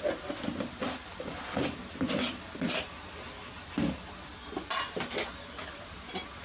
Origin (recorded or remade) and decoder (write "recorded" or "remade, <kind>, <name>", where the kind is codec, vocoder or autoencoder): recorded